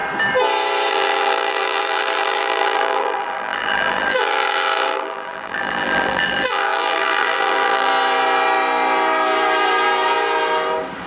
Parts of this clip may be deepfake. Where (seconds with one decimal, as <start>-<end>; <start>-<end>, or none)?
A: 0.9-7.9